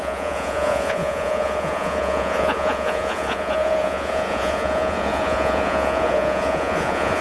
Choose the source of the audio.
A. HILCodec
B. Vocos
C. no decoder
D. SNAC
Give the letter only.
B